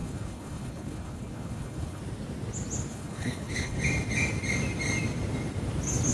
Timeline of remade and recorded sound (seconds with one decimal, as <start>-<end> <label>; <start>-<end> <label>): 0.0-2.0 remade; 2.0-2.9 recorded; 2.9-3.8 remade; 3.8-6.1 recorded